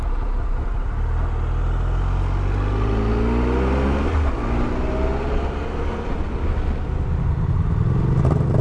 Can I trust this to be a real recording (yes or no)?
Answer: yes